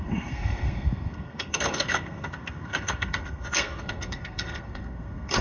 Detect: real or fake fake